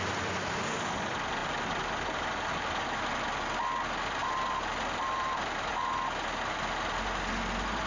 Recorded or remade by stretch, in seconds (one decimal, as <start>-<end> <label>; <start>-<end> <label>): 0.0-1.4 recorded; 1.4-2.8 remade; 2.8-4.2 recorded; 4.2-5.9 remade; 5.9-7.9 recorded